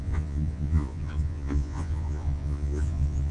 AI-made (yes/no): yes